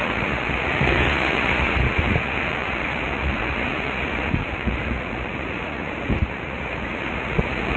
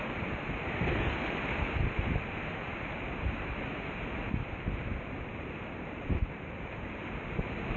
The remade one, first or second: first